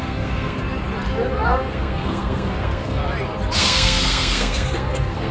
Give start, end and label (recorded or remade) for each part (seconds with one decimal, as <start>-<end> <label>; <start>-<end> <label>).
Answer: 0.0-0.6 remade; 0.6-1.3 recorded; 1.3-3.0 remade; 3.0-3.6 recorded; 3.6-5.3 remade